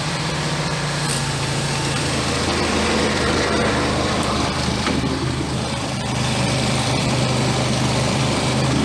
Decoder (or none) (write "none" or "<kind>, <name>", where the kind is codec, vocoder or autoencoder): vocoder, BigVGAN v2